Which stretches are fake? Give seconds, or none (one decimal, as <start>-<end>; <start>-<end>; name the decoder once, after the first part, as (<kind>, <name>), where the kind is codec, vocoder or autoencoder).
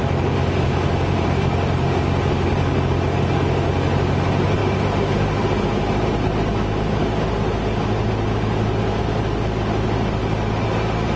none